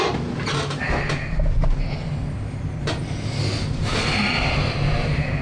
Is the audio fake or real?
real